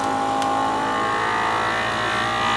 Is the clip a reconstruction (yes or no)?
no